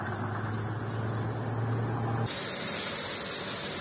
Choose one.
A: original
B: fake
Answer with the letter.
A